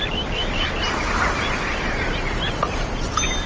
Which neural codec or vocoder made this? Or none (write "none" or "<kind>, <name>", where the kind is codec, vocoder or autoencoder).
vocoder, BigVGAN v2